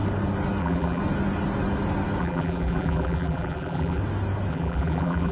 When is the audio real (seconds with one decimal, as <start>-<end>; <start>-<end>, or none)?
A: 0.0-0.6; 1.0-2.2; 4.0-4.5

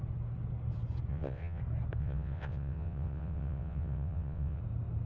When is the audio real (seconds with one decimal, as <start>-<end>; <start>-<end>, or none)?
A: 0.0-1.1; 1.6-2.0; 4.6-5.1

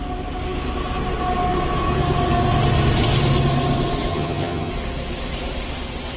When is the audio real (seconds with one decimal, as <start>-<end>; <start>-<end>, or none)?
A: 0.0-4.1; 4.7-6.2

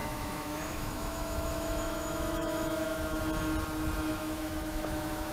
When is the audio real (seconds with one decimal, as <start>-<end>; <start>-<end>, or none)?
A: 3.2-4.1

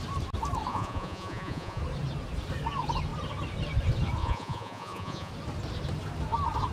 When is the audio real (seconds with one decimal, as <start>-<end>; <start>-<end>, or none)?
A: 0.0-0.7; 1.8-4.2; 5.3-6.7